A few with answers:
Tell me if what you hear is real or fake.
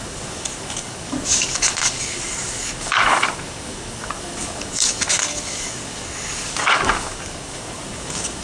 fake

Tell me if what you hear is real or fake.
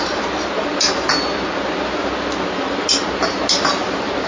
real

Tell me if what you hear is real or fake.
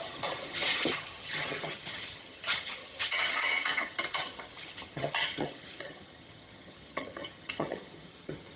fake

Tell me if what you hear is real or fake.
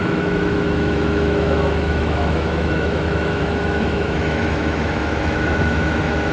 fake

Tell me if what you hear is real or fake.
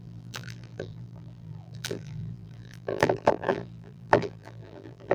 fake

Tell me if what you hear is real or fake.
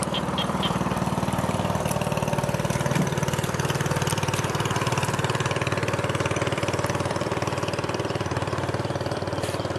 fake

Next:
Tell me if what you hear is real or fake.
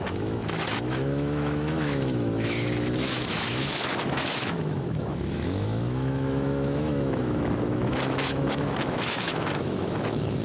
fake